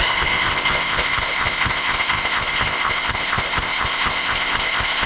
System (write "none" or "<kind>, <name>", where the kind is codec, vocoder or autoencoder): codec, ZipCodec